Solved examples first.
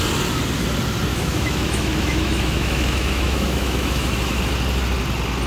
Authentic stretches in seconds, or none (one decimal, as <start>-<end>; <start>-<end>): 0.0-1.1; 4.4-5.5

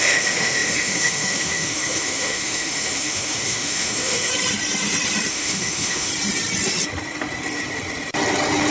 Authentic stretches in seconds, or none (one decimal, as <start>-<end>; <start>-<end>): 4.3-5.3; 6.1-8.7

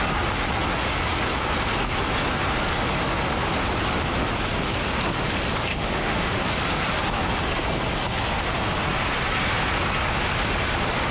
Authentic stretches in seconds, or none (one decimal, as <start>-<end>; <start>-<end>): 0.0-5.7; 6.4-11.1